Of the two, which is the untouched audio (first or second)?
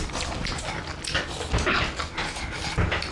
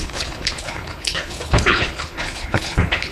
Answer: first